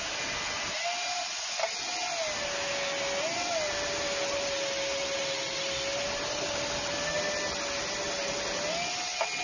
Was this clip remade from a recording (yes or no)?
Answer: no